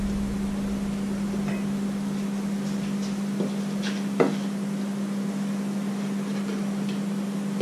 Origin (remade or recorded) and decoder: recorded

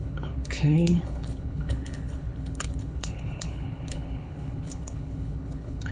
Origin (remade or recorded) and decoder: remade, codec, HILCodec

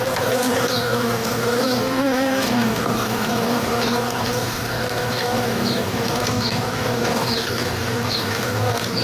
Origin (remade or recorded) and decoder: remade, codec, DAC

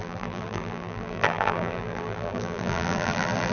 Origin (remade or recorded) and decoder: remade, vocoder, BigVGAN v2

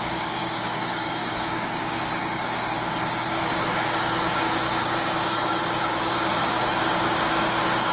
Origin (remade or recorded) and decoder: remade, codec, DAC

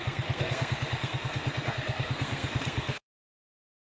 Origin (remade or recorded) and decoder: remade, codec, SNAC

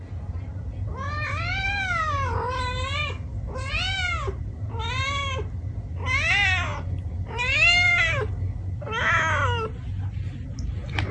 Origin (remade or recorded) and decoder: recorded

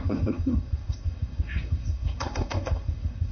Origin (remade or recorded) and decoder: remade, codec, SNAC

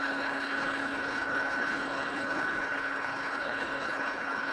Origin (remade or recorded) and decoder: remade, codec, HILCodec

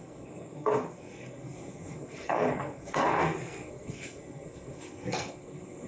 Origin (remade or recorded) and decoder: remade, codec, SNAC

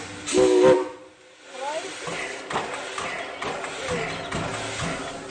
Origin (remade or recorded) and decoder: recorded